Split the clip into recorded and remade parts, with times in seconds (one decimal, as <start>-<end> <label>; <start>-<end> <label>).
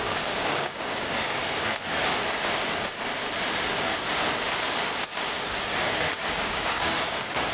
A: 0.0-1.4 remade; 1.4-5.9 recorded; 5.9-7.5 remade